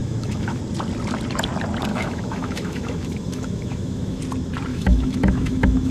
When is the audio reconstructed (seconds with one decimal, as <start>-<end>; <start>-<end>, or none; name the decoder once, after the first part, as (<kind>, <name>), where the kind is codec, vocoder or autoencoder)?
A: 0.0-0.6 (autoencoder, DAC-VAE); 1.9-4.2; 4.7-5.9